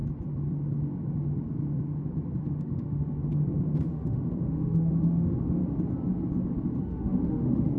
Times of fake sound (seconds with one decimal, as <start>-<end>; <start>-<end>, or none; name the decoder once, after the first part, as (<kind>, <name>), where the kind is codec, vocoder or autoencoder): 2.6-3.2 (autoencoder, DAC-VAE); 3.9-5.6; 6.8-7.8